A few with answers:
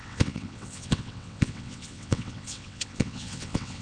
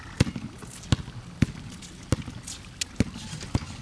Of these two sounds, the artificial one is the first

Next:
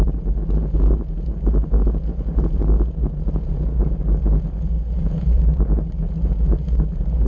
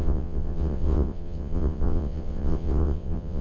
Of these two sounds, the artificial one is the second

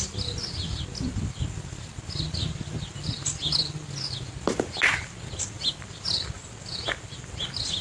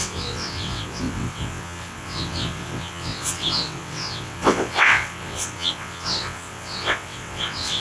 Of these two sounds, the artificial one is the second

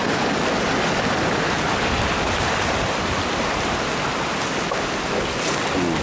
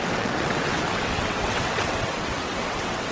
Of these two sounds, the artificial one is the second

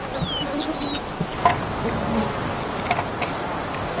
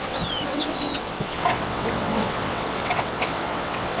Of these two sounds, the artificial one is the second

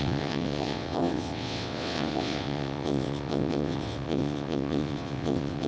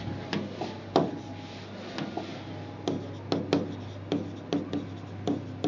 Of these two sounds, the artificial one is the first